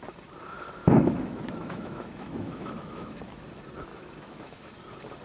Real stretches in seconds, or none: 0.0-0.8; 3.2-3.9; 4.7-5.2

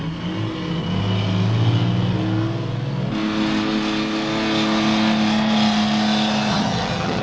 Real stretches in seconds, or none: 0.0-6.5

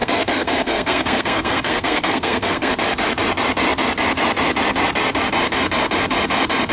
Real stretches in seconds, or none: 2.7-6.7